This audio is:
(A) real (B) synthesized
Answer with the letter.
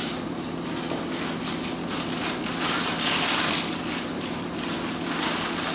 A